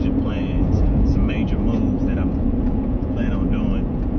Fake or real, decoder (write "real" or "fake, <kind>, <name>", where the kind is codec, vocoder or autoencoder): fake, vocoder, Vocos